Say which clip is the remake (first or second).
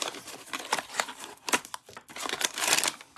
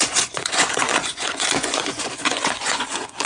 second